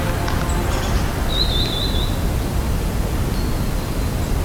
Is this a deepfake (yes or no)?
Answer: no